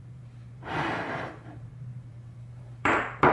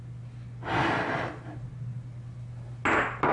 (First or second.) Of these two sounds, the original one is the second